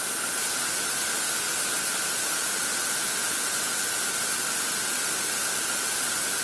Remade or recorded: recorded